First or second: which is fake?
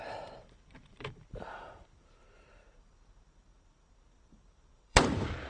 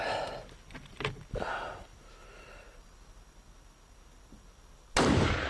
first